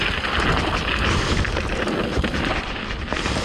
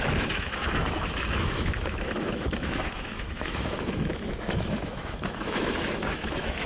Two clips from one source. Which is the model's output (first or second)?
second